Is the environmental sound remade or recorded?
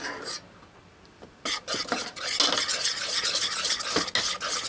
recorded